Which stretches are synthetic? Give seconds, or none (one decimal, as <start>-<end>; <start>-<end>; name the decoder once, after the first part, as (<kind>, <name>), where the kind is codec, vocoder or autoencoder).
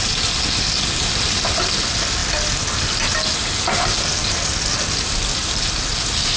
5.4-5.9 (vocoder, BigVGAN v2)